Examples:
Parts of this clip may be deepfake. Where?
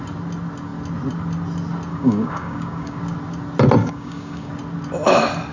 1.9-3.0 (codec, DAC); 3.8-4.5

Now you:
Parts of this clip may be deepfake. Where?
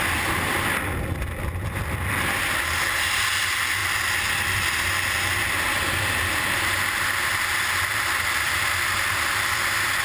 none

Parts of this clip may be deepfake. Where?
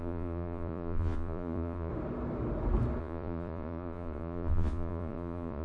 0.0-1.9 (vocoder, Vocos); 3.0-5.6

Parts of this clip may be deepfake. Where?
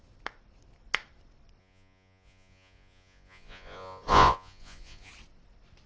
1.6-5.1 (vocoder, Vocos)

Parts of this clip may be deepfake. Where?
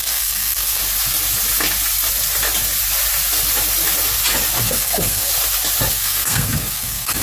0.0-0.8 (codec, SNAC); 4.6-5.3; 5.9-7.2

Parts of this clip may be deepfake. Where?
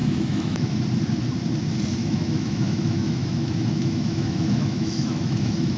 0.0-0.8 (autoencoder, DAC-VAE); 2.0-5.8